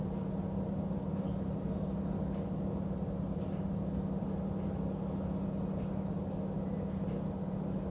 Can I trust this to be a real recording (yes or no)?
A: yes